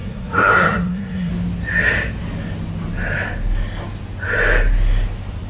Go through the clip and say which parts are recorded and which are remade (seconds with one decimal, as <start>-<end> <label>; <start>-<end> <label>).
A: 0.0-1.3 remade; 1.3-5.5 recorded